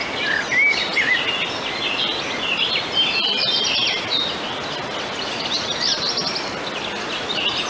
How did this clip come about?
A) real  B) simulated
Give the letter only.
A